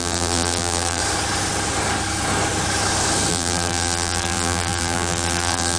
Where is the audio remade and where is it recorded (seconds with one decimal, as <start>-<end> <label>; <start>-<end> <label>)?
0.0-1.0 remade; 1.0-3.3 recorded; 3.3-5.8 remade